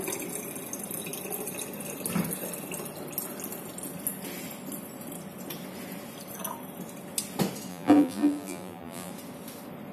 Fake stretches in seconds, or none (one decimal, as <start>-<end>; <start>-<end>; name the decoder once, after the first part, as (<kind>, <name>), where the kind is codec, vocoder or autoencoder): 7.7-9.1 (vocoder, BigVGAN v2)